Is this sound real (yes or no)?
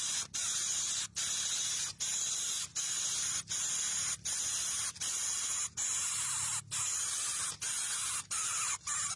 yes